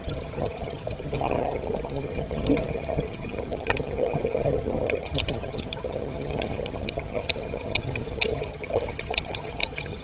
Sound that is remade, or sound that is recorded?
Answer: remade